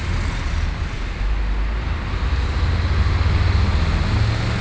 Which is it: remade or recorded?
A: recorded